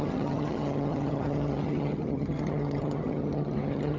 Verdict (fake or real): fake